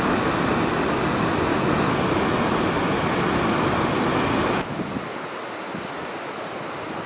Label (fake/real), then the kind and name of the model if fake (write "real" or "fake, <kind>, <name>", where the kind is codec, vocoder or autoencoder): real